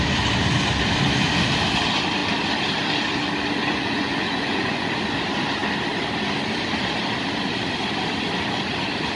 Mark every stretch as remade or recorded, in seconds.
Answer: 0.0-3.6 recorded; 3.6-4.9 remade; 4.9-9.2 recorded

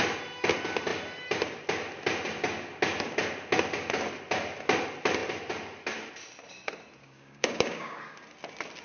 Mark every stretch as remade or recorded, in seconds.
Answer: 0.0-7.0 recorded; 7.0-8.0 remade; 8.0-8.8 recorded

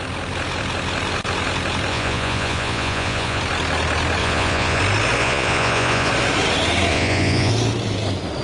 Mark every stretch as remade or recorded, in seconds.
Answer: 0.0-1.9 recorded; 1.9-3.4 remade; 3.4-4.2 recorded; 4.2-4.8 remade; 4.8-5.2 recorded; 5.2-6.1 remade; 6.1-6.9 recorded; 6.9-7.5 remade; 7.5-8.4 recorded

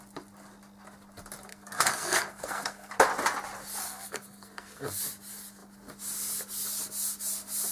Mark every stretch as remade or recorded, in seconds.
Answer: 0.0-1.5 recorded; 1.5-2.9 remade; 2.9-3.8 recorded; 3.8-5.0 remade; 5.0-7.7 recorded